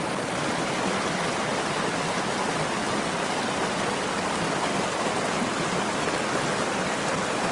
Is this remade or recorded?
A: recorded